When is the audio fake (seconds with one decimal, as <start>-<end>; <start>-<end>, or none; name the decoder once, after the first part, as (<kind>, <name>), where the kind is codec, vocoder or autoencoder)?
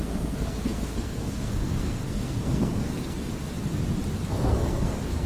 0.0-3.3 (codec, SNAC); 4.3-5.3